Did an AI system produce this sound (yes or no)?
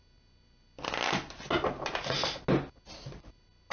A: no